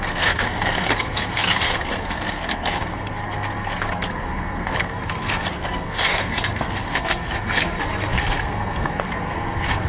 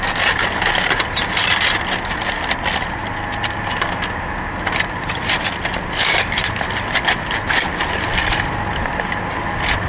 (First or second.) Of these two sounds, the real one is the second